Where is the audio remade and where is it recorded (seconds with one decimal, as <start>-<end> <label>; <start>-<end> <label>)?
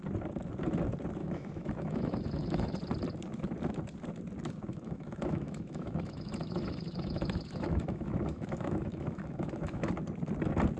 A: 0.0-1.2 recorded; 1.2-2.8 remade; 2.8-4.7 recorded; 4.7-9.9 remade; 9.9-10.8 recorded